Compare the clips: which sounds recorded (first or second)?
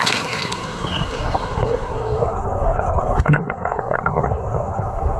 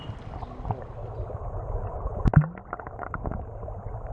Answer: second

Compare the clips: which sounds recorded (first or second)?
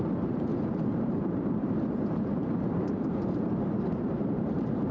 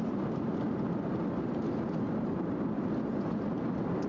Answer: second